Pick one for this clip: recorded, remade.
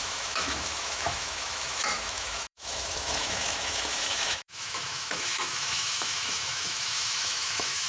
remade